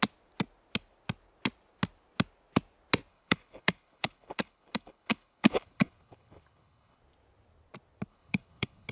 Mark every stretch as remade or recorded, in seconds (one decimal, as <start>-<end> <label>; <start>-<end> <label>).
0.0-3.1 recorded; 3.1-7.0 remade; 7.0-8.1 recorded; 8.1-8.9 remade